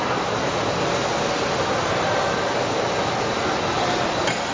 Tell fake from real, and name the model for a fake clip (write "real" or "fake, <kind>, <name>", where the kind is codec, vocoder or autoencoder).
real